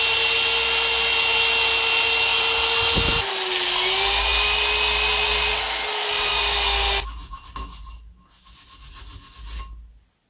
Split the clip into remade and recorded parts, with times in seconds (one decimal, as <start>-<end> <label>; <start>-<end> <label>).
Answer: 0.0-10.3 recorded